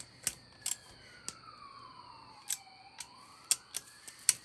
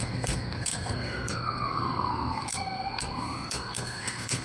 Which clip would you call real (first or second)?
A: first